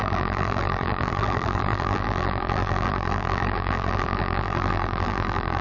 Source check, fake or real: fake